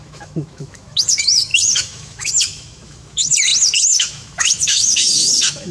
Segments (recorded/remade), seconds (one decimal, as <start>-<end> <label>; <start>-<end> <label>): 0.0-5.7 remade